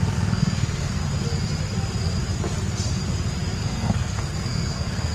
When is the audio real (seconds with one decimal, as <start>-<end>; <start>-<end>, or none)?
1.0-3.6